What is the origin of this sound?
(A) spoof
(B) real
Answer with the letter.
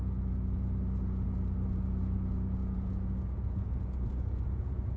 A